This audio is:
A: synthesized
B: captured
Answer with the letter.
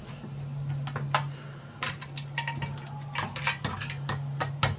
B